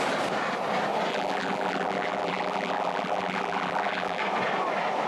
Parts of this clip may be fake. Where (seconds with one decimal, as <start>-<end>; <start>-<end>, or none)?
1.1-4.2